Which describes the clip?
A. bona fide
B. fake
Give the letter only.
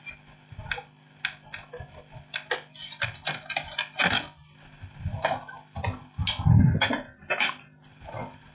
A